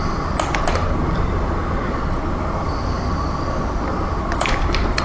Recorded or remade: recorded